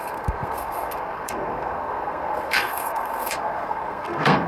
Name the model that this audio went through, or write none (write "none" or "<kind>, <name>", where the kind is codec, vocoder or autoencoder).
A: codec, SNAC